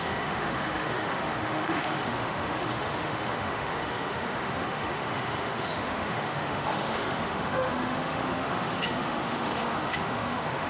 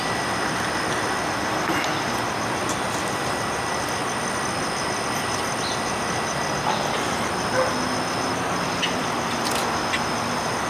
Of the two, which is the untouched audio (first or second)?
second